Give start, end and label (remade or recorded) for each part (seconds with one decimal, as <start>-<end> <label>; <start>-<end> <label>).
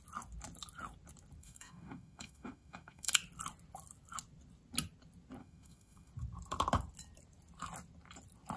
0.0-1.4 recorded; 1.4-3.1 remade; 3.1-5.4 recorded; 5.4-6.1 remade; 6.1-8.6 recorded